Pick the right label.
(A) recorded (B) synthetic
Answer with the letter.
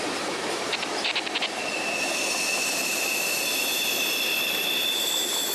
A